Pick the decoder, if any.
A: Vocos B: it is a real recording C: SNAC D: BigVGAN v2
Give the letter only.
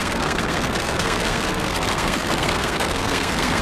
C